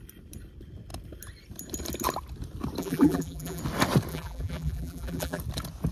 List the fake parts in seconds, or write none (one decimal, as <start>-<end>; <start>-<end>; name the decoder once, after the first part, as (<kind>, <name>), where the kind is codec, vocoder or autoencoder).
2.8-3.6 (vocoder, BigVGAN v2); 4.1-5.4